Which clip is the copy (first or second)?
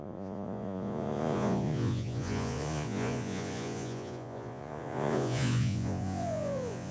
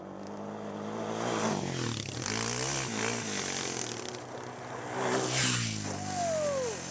first